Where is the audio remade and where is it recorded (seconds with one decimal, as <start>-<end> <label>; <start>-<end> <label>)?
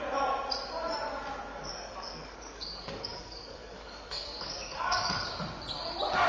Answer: 0.0-1.5 recorded; 1.5-5.3 remade; 5.3-6.3 recorded